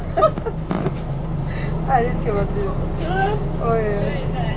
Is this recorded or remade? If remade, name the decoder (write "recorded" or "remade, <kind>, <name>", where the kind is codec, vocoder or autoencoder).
recorded